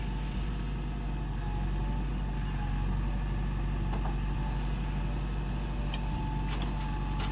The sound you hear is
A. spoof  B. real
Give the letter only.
B